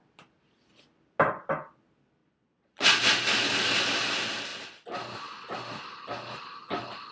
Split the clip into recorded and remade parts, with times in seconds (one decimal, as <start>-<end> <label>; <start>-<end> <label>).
0.0-2.2 recorded; 2.2-3.0 remade; 3.0-7.1 recorded